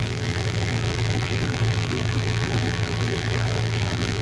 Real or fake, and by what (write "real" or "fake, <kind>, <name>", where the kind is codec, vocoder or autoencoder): fake, vocoder, BigVGAN v2